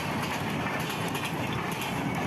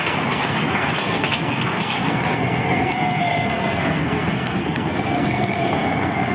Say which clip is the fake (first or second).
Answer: second